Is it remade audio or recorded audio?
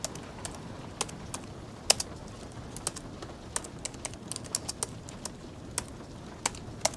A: recorded